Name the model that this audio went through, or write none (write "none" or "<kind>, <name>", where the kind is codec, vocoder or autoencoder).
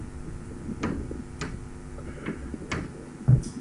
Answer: none